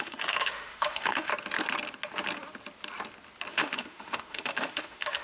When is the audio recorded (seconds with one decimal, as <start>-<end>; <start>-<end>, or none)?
1.3-3.5